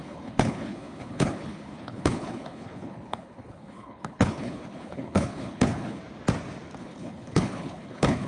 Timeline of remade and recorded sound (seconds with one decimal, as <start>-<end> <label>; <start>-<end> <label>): 0.0-6.0 remade; 6.0-6.8 recorded; 6.8-8.3 remade